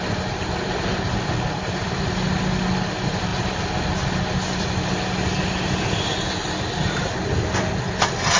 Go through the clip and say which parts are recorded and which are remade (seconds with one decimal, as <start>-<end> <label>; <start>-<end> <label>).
0.0-8.4 recorded

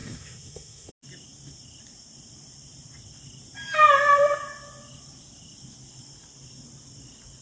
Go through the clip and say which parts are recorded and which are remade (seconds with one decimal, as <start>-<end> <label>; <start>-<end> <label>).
0.0-0.9 remade; 0.9-7.4 recorded

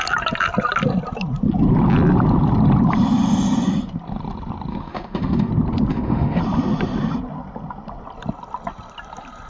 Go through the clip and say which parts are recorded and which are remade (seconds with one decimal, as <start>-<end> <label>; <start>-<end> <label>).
0.0-4.7 recorded; 4.7-5.5 remade; 5.5-5.9 recorded; 5.9-6.4 remade; 6.4-9.5 recorded

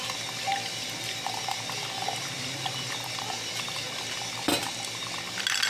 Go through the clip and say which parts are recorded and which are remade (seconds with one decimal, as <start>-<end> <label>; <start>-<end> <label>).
0.0-5.7 recorded

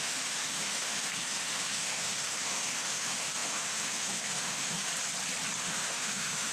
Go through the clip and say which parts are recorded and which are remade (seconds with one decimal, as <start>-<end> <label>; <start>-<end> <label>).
0.0-4.9 remade; 4.9-5.6 recorded; 5.6-6.5 remade

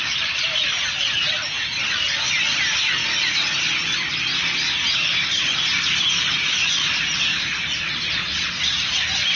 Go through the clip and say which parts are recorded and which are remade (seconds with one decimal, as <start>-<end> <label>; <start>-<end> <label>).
0.0-9.4 recorded

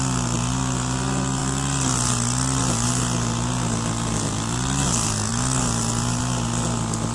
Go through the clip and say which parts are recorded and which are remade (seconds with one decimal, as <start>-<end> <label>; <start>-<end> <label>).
0.0-7.1 recorded

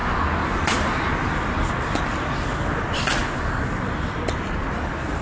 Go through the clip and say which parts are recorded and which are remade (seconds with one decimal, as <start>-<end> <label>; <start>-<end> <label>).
0.0-5.2 recorded